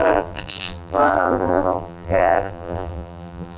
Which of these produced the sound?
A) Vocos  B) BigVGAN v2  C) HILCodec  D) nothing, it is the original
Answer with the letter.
B